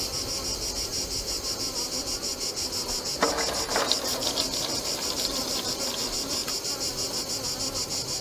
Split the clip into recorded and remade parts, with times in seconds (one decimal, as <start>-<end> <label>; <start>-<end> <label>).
0.0-0.9 recorded; 0.9-2.5 remade; 2.5-4.2 recorded; 4.2-5.4 remade; 5.4-8.2 recorded